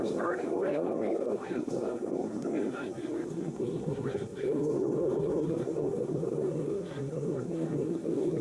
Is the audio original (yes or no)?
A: no